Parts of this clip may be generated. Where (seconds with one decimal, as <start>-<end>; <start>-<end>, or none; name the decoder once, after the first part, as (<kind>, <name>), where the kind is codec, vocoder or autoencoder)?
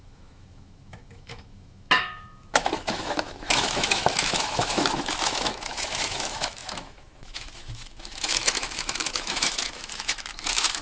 0.0-10.8 (autoencoder, DAC-VAE)